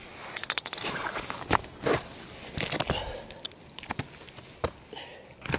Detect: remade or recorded recorded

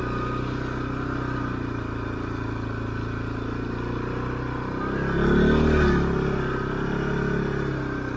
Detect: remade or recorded recorded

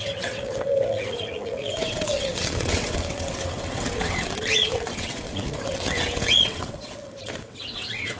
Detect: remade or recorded remade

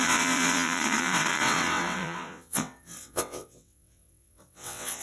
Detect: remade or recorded remade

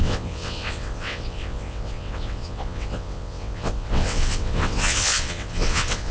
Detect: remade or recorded remade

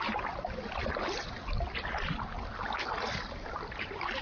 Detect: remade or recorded recorded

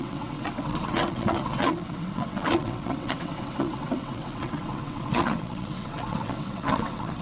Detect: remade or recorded remade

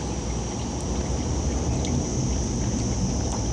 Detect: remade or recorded recorded